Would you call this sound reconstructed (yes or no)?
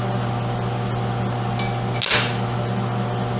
no